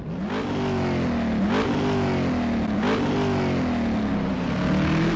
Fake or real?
real